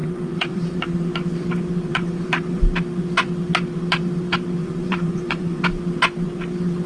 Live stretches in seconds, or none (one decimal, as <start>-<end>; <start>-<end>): 1.1-1.9; 2.6-4.6; 5.6-6.9